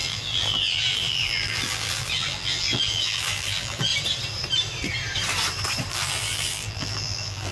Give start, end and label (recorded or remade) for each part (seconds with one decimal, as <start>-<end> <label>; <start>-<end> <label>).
0.0-3.9 remade; 3.9-5.9 recorded; 5.9-7.5 remade